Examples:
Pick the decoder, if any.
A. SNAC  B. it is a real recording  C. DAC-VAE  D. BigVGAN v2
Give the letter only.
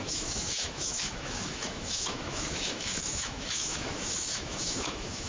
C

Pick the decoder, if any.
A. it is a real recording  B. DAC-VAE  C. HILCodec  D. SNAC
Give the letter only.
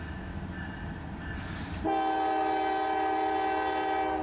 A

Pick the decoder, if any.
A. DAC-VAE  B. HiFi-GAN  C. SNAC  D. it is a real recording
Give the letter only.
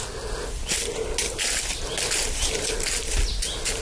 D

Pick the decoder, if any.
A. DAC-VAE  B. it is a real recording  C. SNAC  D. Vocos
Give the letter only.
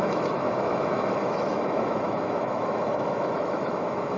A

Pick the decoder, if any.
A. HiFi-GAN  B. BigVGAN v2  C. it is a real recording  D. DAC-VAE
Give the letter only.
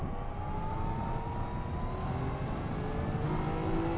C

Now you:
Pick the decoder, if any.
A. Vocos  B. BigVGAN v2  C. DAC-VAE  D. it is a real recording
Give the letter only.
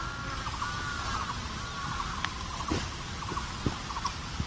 D